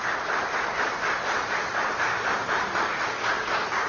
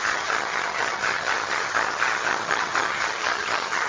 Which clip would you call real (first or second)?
first